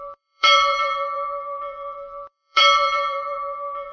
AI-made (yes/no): yes